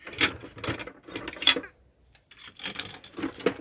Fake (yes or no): no